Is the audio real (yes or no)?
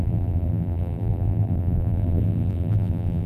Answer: no